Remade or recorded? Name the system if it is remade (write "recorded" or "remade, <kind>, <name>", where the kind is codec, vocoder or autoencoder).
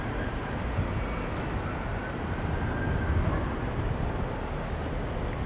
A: recorded